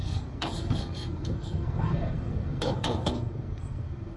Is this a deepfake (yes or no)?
yes